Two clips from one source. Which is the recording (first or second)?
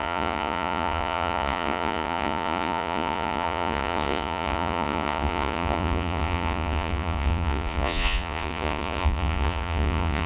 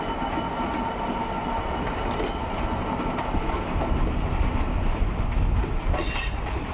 second